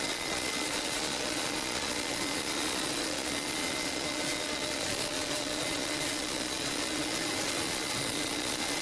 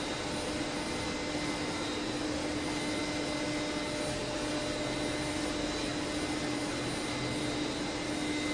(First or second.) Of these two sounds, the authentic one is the second